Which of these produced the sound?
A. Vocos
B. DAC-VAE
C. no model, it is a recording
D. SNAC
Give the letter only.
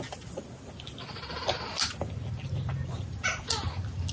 C